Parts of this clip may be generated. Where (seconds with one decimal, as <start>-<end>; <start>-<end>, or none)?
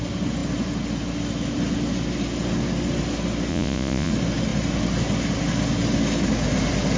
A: 3.5-4.1